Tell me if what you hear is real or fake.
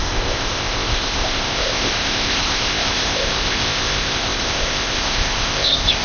fake